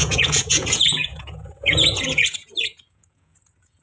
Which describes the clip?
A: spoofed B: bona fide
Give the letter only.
A